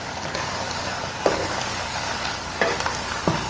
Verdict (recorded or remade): remade